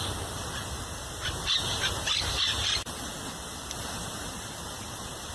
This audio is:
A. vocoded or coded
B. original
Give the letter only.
B